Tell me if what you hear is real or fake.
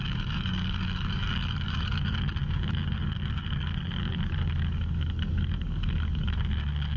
fake